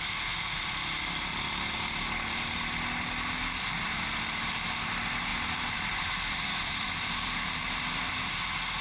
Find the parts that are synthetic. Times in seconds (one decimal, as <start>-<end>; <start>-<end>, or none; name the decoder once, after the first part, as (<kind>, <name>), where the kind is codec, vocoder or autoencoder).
5.3-8.1 (vocoder, BigVGAN v2)